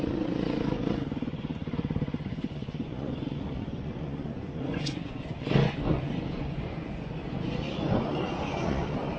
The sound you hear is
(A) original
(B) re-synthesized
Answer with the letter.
B